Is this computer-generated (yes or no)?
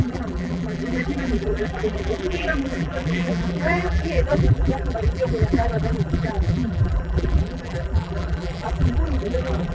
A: yes